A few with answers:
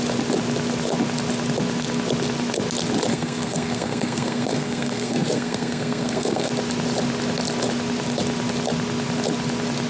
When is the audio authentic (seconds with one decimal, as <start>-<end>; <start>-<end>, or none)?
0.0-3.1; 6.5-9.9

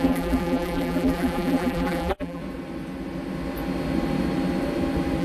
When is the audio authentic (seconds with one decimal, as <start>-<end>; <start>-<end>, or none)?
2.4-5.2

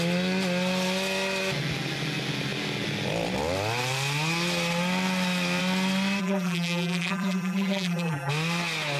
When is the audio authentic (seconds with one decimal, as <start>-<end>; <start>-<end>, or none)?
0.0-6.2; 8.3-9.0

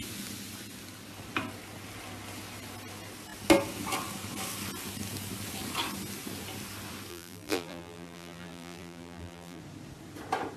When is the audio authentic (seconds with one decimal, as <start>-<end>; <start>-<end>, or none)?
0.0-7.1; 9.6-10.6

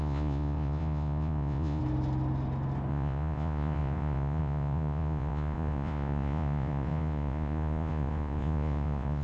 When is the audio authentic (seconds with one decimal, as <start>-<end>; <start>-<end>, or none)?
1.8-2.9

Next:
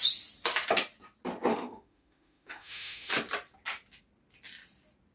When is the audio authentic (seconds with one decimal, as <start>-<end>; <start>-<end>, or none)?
0.0-1.5; 3.1-5.1

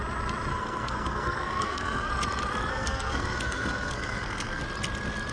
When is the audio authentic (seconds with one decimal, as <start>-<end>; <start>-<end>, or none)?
0.0-0.5; 2.1-2.7; 4.6-5.3